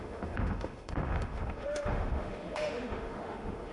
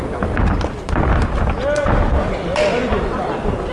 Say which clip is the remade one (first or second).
first